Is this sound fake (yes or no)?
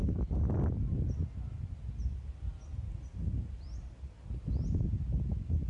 no